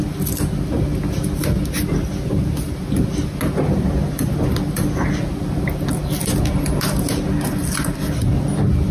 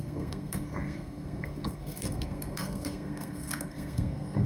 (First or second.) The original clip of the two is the first